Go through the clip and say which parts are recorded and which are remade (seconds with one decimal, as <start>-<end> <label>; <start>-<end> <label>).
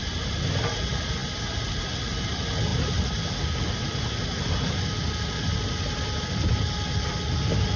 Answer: 0.0-7.8 recorded